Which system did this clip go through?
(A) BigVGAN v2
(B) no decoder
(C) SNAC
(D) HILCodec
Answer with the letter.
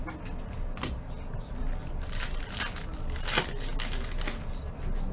B